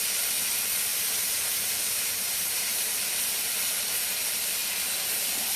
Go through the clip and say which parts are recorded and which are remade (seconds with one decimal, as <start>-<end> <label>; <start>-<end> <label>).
0.0-0.9 recorded; 0.9-3.1 remade; 3.1-5.6 recorded